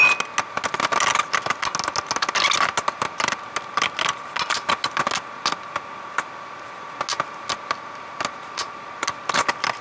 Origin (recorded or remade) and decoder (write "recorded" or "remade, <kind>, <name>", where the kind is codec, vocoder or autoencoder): recorded